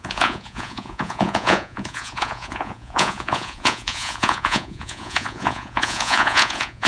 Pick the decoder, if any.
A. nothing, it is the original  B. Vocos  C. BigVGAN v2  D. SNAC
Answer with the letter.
B